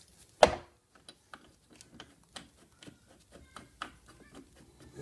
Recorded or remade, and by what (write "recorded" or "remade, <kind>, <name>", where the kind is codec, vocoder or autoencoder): recorded